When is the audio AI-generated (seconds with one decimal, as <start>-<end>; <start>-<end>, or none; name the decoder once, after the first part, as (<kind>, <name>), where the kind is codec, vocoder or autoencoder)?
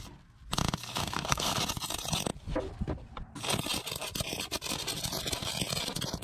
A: 1.0-1.6 (codec, SNAC)